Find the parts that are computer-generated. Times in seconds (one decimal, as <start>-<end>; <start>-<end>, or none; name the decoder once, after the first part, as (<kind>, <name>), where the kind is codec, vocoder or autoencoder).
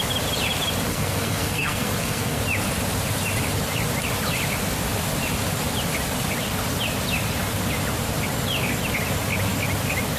0.9-2.4 (codec, SNAC)